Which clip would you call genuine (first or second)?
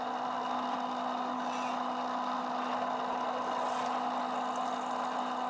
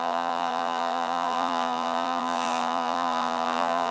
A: first